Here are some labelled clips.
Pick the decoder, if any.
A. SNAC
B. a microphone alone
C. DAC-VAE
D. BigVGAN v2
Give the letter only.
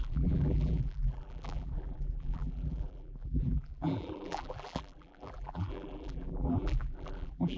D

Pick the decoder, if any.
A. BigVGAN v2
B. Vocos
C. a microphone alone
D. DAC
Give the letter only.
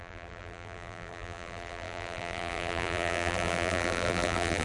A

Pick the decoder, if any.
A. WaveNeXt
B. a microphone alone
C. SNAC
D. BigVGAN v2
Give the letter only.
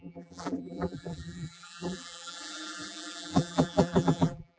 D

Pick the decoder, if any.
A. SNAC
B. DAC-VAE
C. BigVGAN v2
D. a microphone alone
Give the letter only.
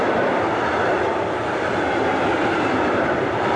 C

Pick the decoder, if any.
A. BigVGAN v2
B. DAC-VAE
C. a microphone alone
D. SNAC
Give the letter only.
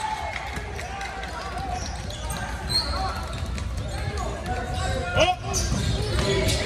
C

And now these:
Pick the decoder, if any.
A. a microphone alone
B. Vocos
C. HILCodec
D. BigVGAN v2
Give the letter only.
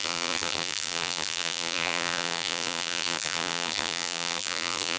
D